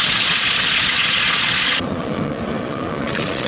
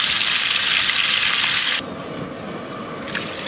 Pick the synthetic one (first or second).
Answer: first